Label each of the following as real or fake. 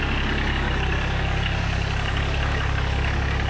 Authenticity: fake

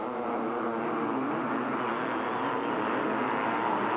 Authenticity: real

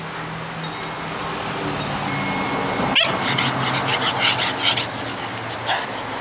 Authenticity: real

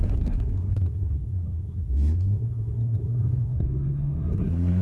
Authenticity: fake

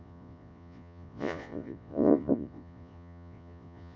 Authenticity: fake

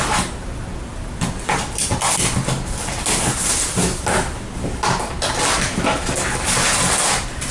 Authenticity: real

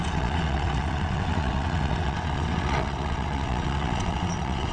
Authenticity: fake